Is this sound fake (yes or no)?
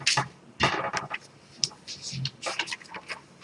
no